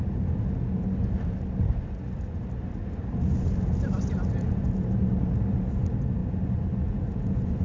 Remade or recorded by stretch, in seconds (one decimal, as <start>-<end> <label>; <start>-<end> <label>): 0.0-7.6 recorded